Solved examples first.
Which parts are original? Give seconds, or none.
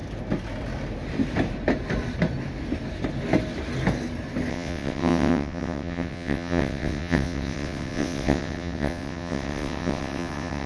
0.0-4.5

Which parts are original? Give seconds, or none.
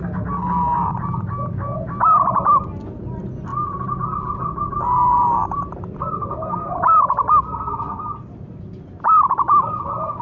0.0-10.2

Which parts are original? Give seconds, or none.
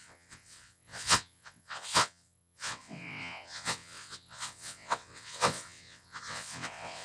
none